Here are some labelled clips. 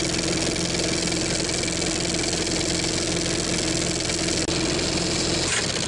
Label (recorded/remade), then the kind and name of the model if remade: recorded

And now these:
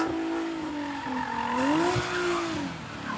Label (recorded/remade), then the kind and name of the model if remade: recorded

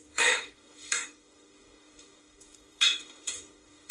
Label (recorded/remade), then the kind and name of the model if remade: remade, codec, DAC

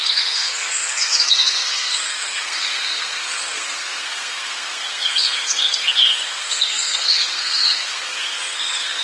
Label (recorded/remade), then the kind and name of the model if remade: remade, codec, SNAC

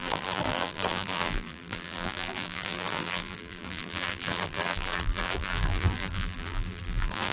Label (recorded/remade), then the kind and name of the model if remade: remade, vocoder, BigVGAN v2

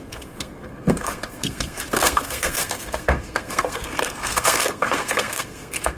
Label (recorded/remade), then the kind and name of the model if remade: remade, codec, SNAC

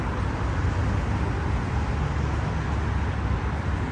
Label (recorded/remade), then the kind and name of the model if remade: recorded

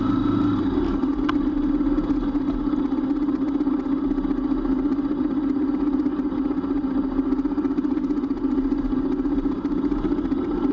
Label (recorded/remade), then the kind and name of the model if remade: recorded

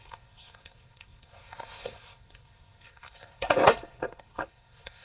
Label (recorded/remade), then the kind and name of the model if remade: remade, codec, SNAC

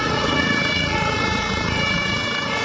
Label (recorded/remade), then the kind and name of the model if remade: remade, vocoder, Vocos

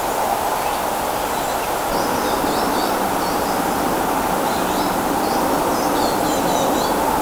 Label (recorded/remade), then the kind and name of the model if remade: recorded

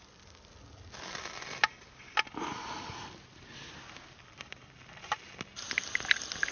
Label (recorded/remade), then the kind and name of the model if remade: recorded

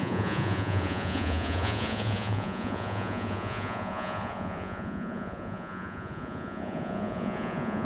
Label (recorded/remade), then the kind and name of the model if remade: remade, vocoder, Vocos